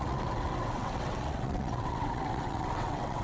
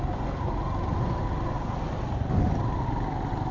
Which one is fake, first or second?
first